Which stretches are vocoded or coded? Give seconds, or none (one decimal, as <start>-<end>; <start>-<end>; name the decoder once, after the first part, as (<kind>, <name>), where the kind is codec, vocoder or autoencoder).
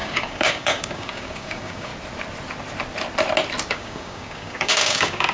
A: 0.0-1.9 (codec, DAC); 3.7-5.3